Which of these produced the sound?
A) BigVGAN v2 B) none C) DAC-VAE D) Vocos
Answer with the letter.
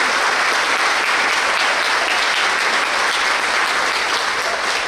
B